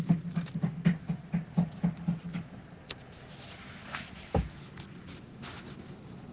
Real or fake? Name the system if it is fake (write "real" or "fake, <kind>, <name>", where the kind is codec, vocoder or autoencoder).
real